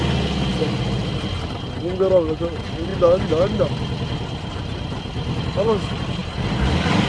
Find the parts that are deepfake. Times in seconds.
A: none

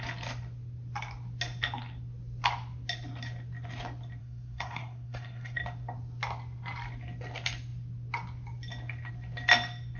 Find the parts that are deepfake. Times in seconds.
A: 4.2-5.6 (codec, SNAC)

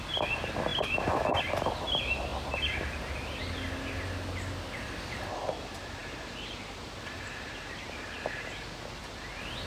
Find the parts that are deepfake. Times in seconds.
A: none

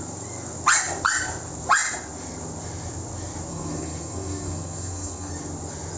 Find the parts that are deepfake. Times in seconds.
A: 3.5-5.3 (codec, SNAC)